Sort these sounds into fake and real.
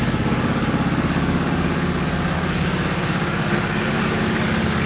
fake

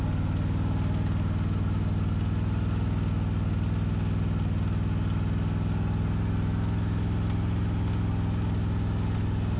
real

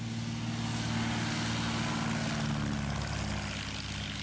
real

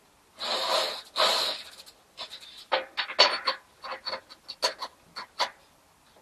real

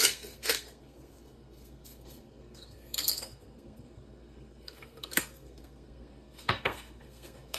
fake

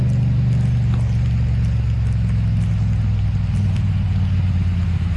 real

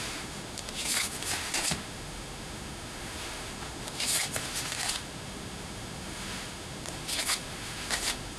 fake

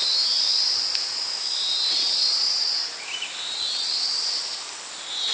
real